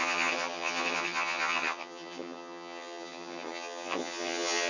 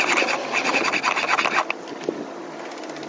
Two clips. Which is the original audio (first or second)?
second